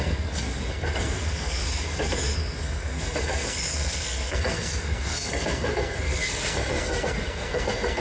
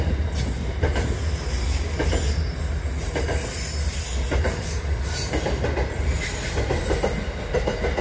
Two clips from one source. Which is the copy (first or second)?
first